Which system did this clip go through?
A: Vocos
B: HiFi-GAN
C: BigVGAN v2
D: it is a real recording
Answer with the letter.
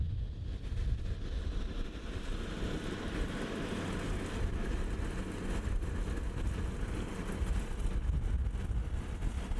D